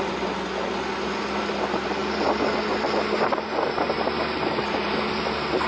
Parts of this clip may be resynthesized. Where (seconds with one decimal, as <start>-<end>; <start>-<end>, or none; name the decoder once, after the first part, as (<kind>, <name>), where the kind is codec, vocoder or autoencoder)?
none